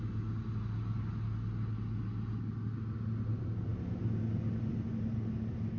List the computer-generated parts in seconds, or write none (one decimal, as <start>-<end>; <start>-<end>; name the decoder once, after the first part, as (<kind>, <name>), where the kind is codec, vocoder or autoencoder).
none